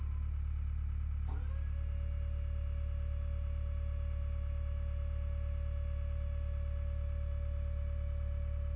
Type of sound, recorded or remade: recorded